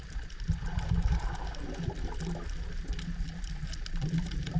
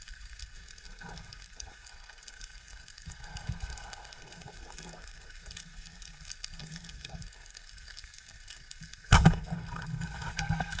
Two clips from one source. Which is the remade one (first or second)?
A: second